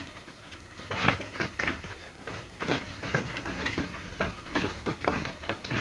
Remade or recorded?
remade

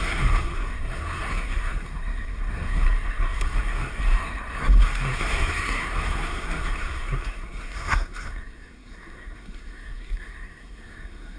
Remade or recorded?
remade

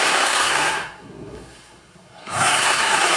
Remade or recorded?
remade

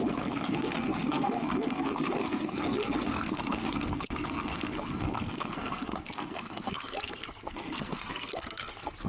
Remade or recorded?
remade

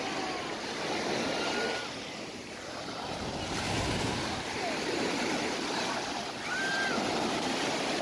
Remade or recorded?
recorded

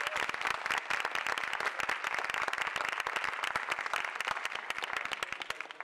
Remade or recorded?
recorded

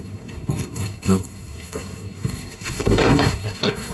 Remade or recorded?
remade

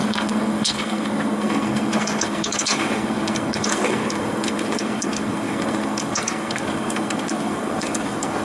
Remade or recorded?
remade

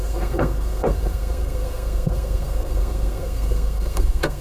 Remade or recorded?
remade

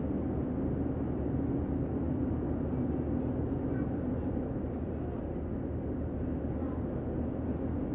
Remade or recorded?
recorded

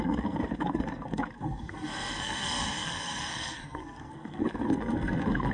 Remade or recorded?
remade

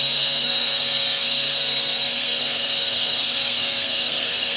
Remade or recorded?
remade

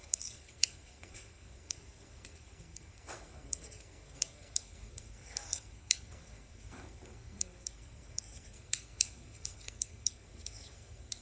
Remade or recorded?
remade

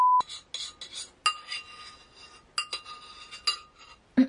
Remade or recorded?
recorded